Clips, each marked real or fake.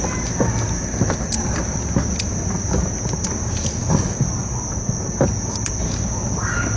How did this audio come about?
real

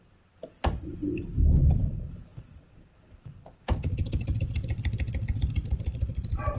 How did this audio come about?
real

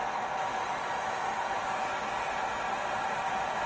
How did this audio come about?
real